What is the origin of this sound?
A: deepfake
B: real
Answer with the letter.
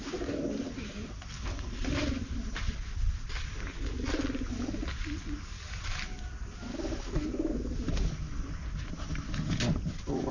B